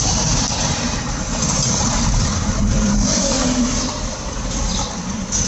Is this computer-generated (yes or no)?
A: yes